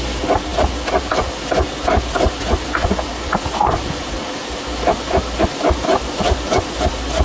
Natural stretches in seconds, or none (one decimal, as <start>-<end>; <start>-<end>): 0.0-7.2